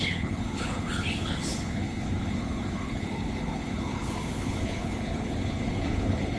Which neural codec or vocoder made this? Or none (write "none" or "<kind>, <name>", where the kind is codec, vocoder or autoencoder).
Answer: codec, HILCodec